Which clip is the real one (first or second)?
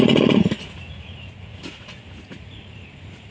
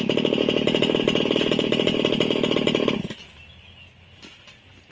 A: second